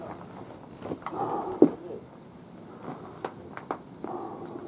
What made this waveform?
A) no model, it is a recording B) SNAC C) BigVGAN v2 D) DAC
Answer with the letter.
C